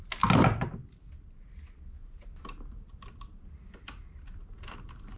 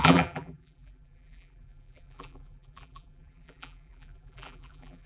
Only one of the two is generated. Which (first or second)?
second